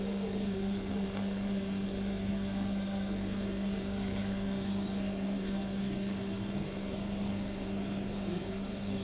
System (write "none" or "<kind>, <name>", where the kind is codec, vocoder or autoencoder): codec, SNAC